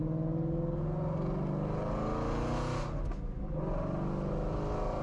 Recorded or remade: recorded